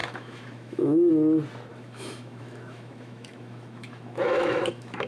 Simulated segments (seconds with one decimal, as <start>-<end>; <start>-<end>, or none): 0.0-1.1; 1.7-5.1